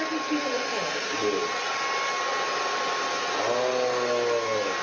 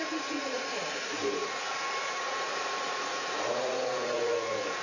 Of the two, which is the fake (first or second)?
second